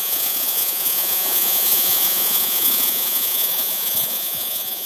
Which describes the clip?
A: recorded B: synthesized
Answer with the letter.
B